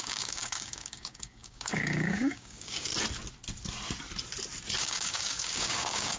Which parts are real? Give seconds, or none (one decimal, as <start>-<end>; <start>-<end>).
2.9-4.8